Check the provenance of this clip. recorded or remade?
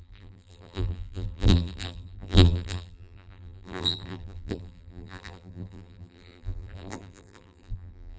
remade